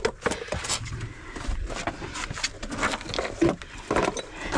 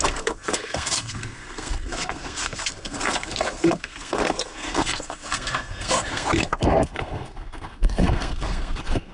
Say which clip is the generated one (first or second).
second